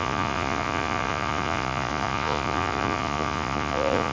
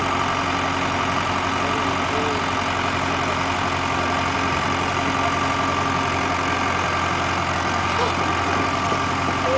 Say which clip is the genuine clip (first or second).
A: second